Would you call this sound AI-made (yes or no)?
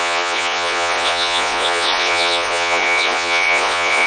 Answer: yes